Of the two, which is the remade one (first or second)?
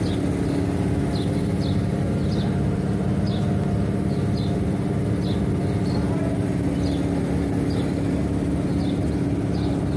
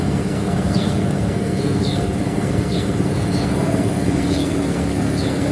second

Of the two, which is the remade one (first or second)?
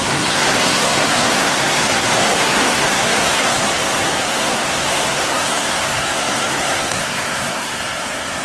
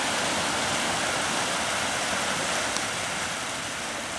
first